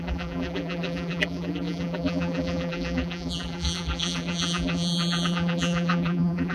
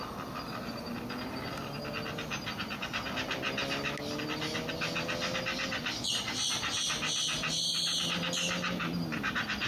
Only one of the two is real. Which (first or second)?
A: second